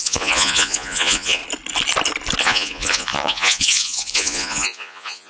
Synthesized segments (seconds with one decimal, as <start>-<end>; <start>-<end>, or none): 0.0-1.4; 2.4-5.3